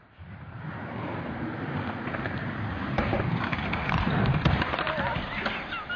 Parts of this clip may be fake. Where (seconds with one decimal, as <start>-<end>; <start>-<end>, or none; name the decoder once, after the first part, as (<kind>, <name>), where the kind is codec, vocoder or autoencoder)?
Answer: 0.0-3.2 (vocoder, BigVGAN v2)

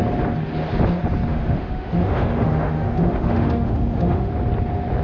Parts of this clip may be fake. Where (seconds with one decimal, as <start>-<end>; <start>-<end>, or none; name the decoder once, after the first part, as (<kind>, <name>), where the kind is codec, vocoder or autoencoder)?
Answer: 1.3-4.3 (autoencoder, DAC-VAE)